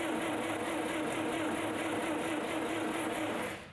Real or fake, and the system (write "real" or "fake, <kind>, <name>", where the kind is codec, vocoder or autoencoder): real